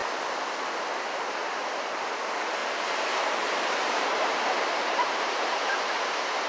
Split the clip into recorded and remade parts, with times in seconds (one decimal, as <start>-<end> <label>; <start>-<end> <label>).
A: 0.0-2.6 recorded; 2.6-6.5 remade